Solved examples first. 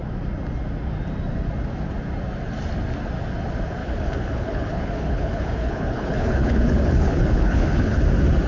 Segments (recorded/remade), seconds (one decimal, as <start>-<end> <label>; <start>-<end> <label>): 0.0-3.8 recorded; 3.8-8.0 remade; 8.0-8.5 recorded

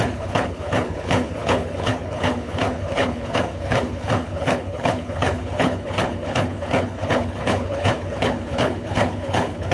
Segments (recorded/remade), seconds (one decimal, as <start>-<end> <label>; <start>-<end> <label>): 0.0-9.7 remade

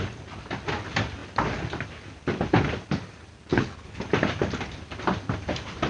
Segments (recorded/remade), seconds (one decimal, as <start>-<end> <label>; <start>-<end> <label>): 0.0-3.5 recorded; 3.5-4.0 remade; 4.0-5.9 recorded

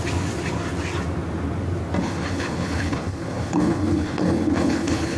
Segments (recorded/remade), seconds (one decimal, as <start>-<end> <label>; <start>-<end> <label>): 0.0-2.0 recorded; 2.0-5.2 remade

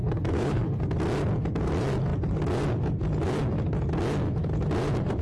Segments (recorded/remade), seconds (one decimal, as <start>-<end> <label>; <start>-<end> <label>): 0.0-0.8 remade; 0.8-5.2 recorded

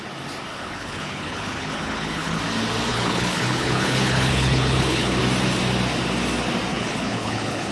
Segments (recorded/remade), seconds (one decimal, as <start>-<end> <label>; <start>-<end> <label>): 0.0-0.5 recorded; 0.5-2.4 remade; 2.4-2.9 recorded; 2.9-5.2 remade; 5.2-6.7 recorded; 6.7-7.7 remade